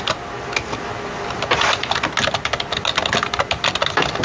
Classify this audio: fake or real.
real